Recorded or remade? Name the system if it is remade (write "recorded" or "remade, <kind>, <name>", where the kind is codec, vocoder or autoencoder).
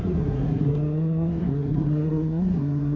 remade, codec, SNAC